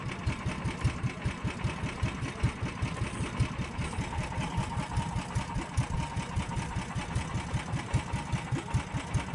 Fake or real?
real